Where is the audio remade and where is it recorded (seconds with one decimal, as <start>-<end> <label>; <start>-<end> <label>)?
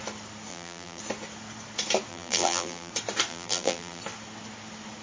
0.0-0.5 recorded; 0.5-1.0 remade; 1.0-2.1 recorded; 2.1-2.9 remade; 2.9-3.3 recorded; 3.3-4.0 remade; 4.0-5.0 recorded